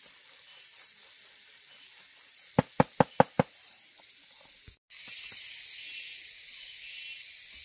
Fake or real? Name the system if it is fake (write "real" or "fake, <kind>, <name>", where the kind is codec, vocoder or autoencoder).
real